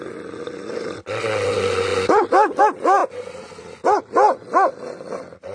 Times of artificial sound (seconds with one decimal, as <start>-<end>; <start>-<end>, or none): none